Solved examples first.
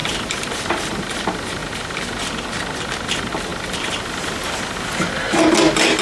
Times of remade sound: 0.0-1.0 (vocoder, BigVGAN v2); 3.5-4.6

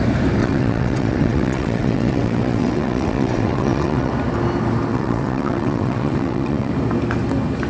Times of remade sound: 0.4-4.1 (vocoder, WaveNeXt); 4.9-6.7

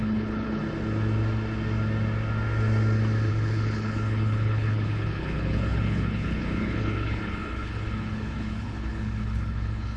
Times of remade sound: 0.0-0.6 (codec, HILCodec); 3.3-10.0